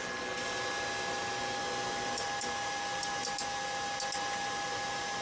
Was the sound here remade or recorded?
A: recorded